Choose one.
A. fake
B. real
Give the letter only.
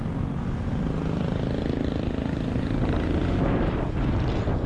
B